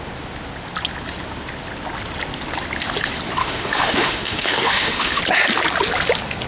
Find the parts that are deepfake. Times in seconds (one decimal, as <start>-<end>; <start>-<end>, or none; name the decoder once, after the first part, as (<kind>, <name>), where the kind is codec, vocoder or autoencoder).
3.4-5.2 (autoencoder, DAC-VAE)